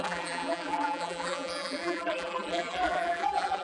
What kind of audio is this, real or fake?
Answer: fake